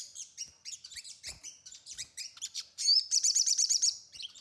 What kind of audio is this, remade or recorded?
remade